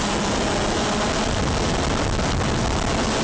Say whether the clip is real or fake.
real